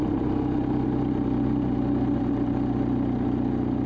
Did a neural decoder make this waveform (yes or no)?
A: no